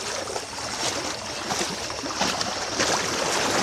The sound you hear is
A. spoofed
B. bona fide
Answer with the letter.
B